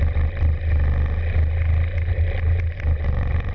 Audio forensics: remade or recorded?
recorded